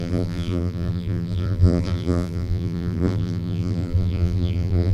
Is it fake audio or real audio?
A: fake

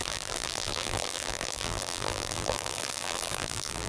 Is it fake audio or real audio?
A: fake